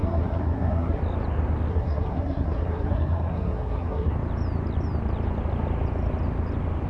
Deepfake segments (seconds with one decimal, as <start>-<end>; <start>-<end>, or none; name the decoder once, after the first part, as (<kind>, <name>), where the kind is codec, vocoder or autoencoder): 0.0-1.0 (codec, SNAC); 1.7-4.1